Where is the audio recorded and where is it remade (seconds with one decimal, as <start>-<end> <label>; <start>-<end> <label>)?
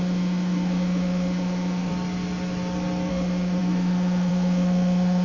0.0-1.9 remade; 1.9-3.1 recorded; 3.1-5.2 remade